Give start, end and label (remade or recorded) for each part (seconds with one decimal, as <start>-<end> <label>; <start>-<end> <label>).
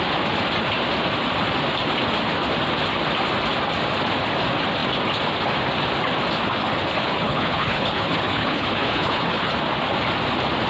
0.0-7.0 recorded; 7.0-9.5 remade; 9.5-10.7 recorded